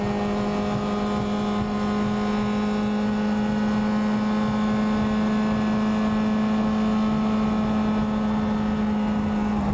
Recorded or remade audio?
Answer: recorded